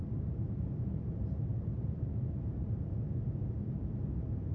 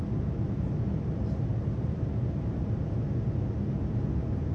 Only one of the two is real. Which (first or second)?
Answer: second